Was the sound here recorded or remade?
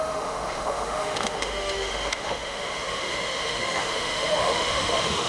remade